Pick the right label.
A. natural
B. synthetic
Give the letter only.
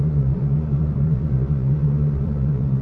B